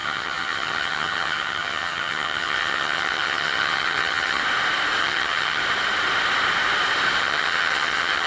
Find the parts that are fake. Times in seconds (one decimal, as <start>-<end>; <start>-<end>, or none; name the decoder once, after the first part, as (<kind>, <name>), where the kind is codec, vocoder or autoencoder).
0.0-4.4 (vocoder, HiFi-GAN); 5.0-5.6; 7.2-8.3